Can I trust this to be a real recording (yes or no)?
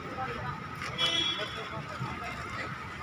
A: yes